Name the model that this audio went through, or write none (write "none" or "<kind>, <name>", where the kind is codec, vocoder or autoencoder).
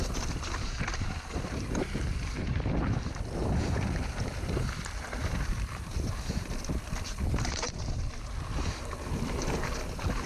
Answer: vocoder, BigVGAN v2